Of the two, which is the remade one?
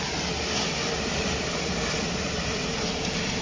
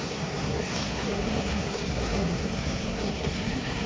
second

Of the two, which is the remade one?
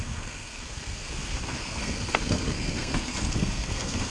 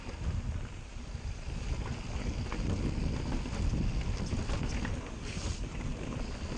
first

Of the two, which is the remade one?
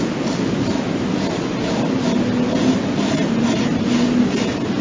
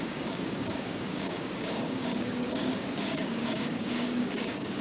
second